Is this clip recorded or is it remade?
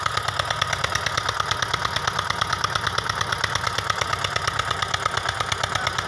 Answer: recorded